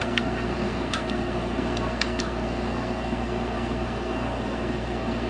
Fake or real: fake